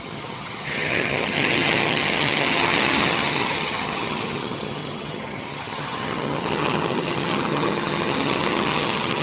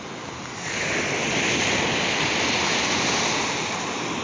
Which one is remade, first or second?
first